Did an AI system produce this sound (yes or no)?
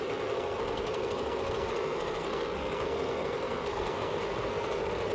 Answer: yes